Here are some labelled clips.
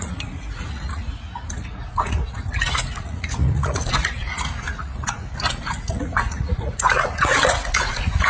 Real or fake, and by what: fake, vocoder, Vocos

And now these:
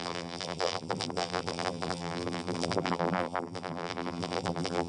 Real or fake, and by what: fake, vocoder, BigVGAN v2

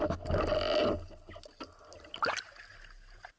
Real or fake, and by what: real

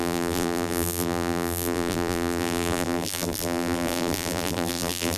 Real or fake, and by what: fake, vocoder, BigVGAN v2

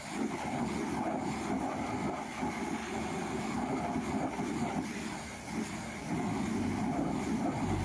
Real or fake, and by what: real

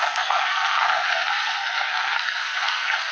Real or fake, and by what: fake, codec, SNAC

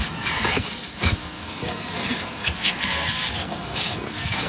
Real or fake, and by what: fake, codec, SNAC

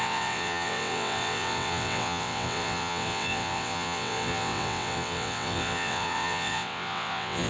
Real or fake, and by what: fake, vocoder, WaveNeXt